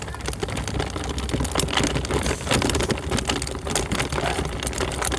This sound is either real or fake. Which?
real